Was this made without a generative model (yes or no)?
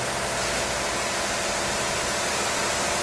yes